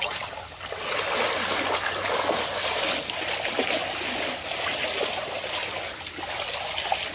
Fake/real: real